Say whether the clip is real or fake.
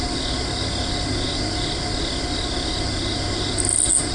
real